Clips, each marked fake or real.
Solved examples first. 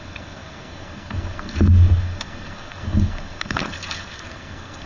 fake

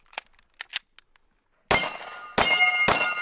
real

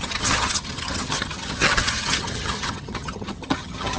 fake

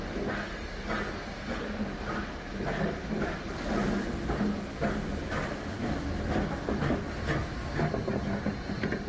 real